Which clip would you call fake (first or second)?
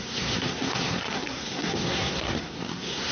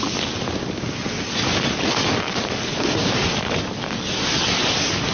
first